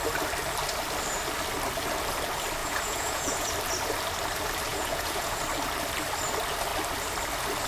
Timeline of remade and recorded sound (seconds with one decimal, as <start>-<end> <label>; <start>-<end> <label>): 0.0-2.6 recorded; 2.6-3.5 remade; 3.5-4.7 recorded; 4.7-5.4 remade; 5.4-7.7 recorded